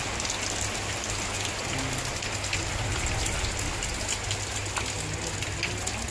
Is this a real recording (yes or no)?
yes